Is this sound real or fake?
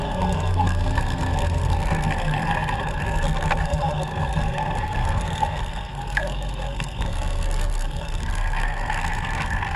fake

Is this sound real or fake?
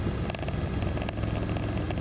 real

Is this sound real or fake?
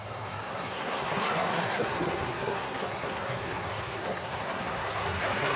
fake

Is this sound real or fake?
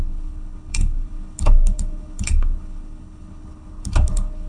fake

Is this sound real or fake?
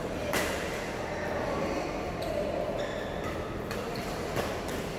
real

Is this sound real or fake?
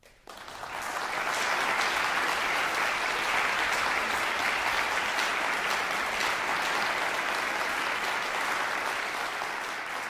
real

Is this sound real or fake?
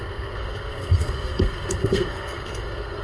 fake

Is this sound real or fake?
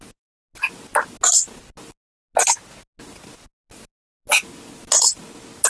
real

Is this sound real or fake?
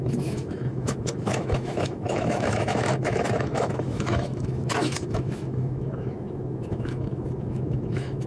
fake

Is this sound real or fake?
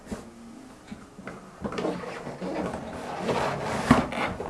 real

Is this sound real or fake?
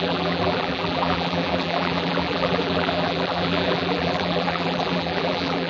fake